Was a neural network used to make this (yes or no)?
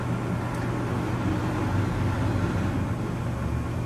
no